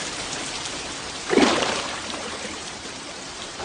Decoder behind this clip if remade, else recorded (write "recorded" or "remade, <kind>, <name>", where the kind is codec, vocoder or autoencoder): remade, vocoder, BigVGAN v2